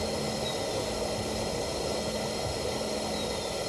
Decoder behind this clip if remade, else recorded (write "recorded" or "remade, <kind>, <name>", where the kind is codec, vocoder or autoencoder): recorded